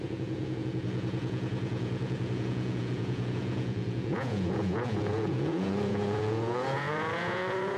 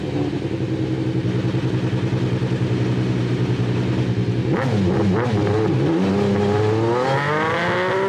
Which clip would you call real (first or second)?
second